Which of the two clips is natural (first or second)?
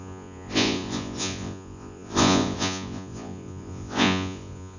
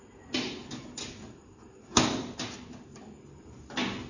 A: second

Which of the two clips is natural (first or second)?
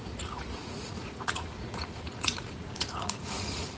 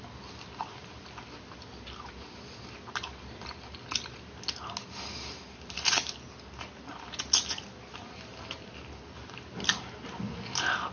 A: second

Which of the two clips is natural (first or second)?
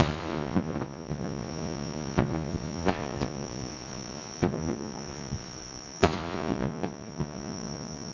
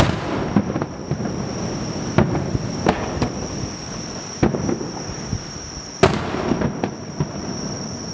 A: second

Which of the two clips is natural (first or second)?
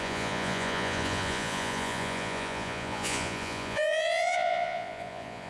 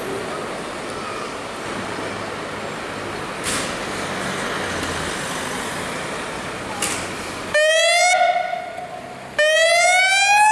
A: second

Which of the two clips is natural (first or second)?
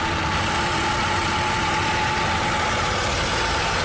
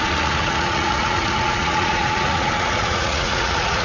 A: first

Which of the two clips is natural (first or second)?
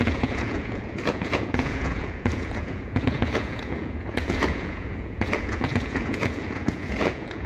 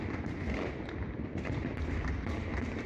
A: second